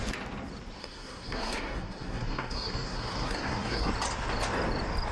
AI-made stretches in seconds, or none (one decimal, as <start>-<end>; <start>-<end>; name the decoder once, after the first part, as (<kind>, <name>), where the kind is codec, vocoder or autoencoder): 0.8-3.9 (codec, SNAC)